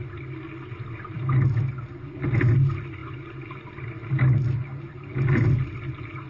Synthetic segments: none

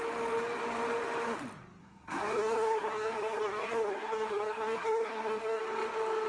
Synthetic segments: 1.8-5.6

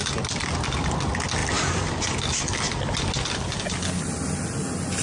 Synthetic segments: none

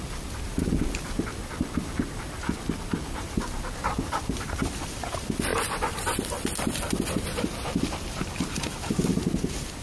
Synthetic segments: 0.0-5.5; 6.8-9.8

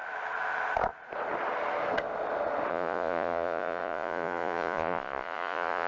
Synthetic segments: 2.7-5.9

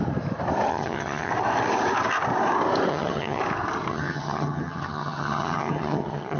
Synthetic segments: 0.7-1.3; 2.9-3.4; 3.9-6.4

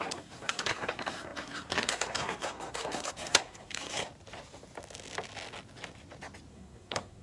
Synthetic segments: 0.0-4.1; 6.5-7.2